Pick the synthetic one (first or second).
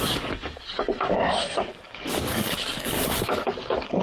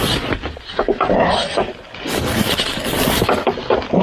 first